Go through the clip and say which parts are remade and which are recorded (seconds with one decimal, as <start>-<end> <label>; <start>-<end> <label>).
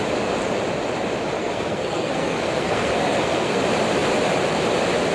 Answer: 0.0-1.4 recorded; 1.4-3.6 remade; 3.6-5.1 recorded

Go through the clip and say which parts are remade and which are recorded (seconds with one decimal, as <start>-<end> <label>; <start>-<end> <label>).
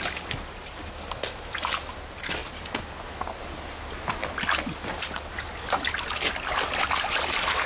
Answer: 0.0-7.7 recorded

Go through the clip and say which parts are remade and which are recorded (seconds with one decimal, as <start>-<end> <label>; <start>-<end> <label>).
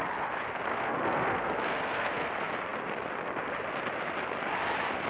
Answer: 0.0-0.7 recorded; 0.7-2.3 remade; 2.3-5.1 recorded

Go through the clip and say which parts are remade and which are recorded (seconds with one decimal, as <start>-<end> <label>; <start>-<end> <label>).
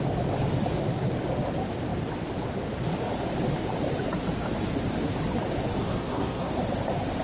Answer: 0.0-5.8 recorded; 5.8-6.5 remade; 6.5-7.2 recorded